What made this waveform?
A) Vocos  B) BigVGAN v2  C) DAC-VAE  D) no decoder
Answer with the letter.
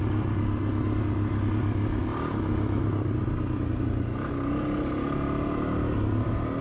D